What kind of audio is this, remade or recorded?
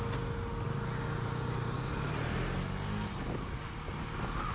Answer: recorded